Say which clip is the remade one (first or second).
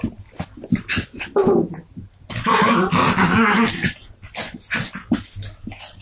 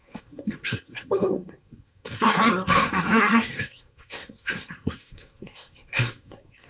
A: second